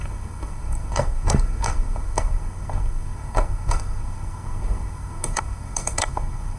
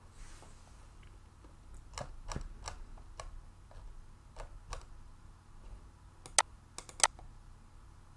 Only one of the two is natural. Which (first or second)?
second